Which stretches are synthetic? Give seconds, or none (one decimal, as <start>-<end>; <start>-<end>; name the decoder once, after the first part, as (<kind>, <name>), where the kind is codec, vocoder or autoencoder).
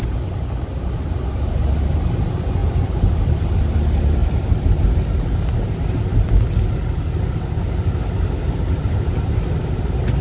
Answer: none